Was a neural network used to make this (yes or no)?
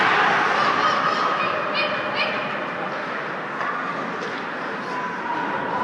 no